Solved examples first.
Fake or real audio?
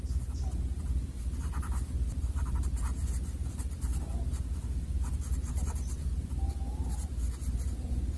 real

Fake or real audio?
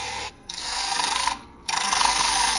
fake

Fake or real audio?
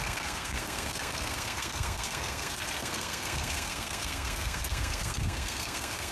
fake